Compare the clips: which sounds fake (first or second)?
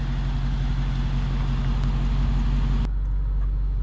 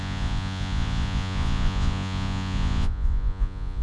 second